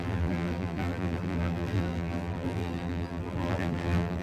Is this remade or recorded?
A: remade